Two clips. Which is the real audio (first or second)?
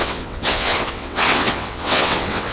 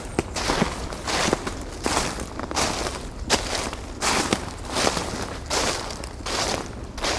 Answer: second